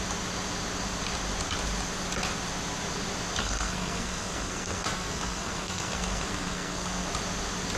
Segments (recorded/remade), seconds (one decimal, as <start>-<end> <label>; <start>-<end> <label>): 0.0-3.4 recorded; 3.4-7.1 remade; 7.1-7.8 recorded